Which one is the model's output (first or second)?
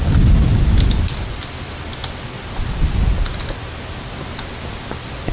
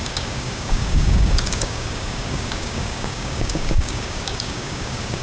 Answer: second